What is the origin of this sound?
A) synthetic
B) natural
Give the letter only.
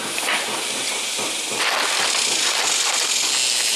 B